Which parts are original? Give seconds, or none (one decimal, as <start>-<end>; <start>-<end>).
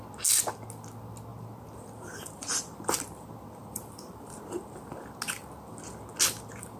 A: 0.0-1.3; 5.0-6.8